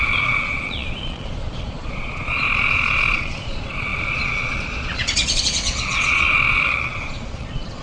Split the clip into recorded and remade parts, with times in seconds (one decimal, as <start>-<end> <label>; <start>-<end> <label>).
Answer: 0.0-7.8 remade

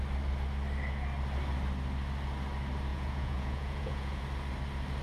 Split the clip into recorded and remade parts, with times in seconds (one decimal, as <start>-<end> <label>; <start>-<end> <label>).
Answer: 0.0-2.9 recorded; 2.9-4.2 remade; 4.2-5.0 recorded

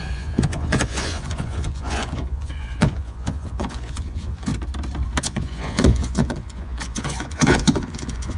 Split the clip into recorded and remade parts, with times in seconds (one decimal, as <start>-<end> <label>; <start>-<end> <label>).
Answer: 0.0-4.5 remade; 4.5-5.2 recorded; 5.2-8.4 remade

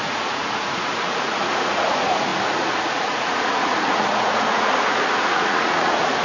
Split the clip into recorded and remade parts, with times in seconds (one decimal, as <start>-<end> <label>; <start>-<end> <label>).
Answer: 0.0-6.2 remade